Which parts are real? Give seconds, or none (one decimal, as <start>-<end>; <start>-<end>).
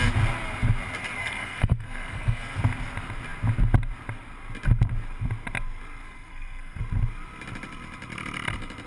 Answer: 0.0-1.2; 2.6-6.0; 6.8-8.9